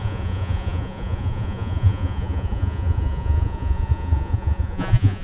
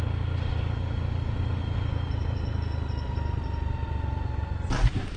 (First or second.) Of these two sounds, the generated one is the first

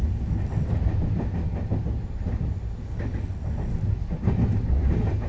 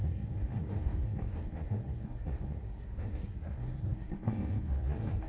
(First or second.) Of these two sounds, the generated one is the second